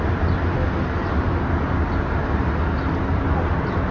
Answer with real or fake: real